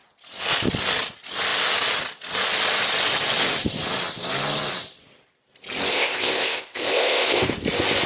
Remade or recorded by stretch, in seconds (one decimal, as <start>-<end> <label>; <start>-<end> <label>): 0.0-5.9 recorded; 5.9-7.5 remade; 7.5-8.1 recorded